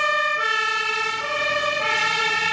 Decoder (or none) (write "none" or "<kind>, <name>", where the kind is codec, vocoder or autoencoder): vocoder, BigVGAN v2